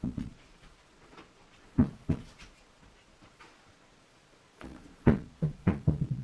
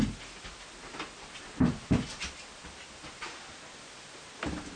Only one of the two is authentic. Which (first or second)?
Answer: second